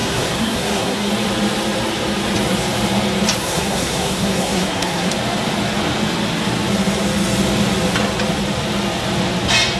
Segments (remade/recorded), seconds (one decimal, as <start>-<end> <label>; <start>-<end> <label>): 0.0-1.1 remade; 1.1-3.4 recorded; 3.4-5.1 remade; 5.1-9.8 recorded

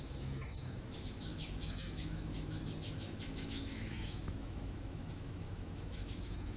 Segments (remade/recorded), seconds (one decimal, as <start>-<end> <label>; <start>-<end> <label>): 0.0-6.6 remade

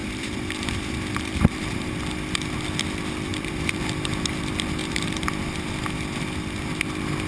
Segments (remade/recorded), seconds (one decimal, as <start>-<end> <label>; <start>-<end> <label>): 0.0-1.9 remade; 1.9-3.3 recorded; 3.3-3.8 remade; 3.8-4.8 recorded; 4.8-5.3 remade; 5.3-7.3 recorded

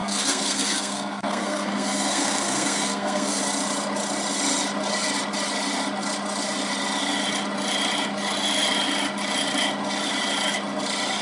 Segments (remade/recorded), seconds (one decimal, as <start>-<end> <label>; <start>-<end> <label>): 0.0-3.4 remade; 3.4-11.2 recorded